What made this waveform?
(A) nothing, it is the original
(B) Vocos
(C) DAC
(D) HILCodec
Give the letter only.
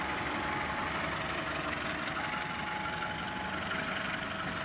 A